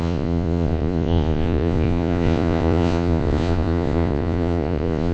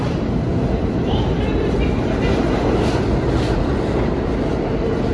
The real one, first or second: second